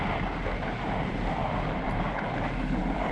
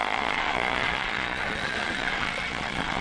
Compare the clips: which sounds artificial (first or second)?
second